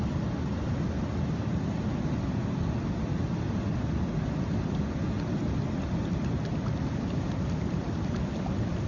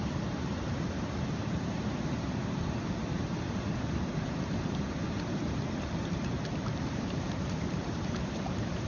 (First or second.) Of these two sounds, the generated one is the second